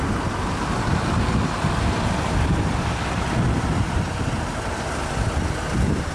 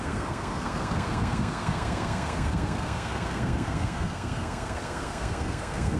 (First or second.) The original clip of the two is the first